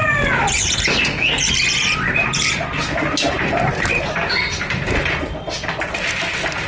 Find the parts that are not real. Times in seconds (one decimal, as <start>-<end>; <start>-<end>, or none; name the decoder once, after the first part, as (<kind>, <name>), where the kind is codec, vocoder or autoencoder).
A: none